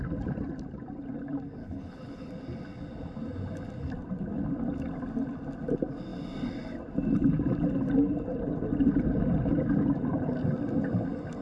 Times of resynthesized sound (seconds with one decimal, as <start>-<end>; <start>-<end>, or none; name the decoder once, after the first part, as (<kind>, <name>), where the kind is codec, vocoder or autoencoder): 1.6-2.3 (codec, HILCodec)